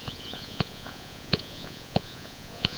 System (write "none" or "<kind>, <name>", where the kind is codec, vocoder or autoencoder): vocoder, Vocos